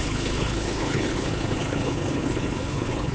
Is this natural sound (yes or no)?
no